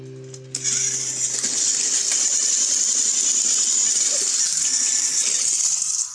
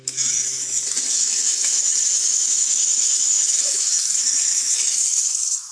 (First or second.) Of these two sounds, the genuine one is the first